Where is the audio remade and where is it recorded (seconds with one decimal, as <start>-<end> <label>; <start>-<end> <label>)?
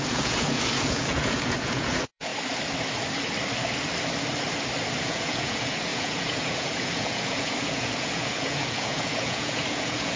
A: 0.0-2.3 remade; 2.3-5.0 recorded; 5.0-10.2 remade